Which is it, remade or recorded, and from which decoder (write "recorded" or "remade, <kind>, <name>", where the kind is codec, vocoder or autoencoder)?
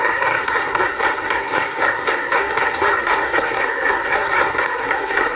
remade, codec, SNAC